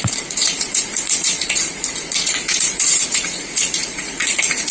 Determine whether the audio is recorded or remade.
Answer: remade